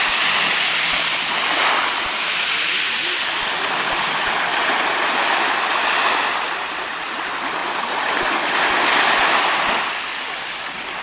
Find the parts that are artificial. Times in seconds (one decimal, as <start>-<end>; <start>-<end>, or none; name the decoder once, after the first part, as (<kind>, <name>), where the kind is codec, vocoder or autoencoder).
7.6-9.1 (vocoder, BigVGAN v2)